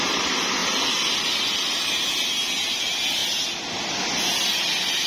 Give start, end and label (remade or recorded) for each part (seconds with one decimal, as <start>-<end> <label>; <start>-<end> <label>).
0.0-0.6 remade; 0.6-1.2 recorded; 1.2-3.2 remade; 3.2-4.6 recorded; 4.6-5.1 remade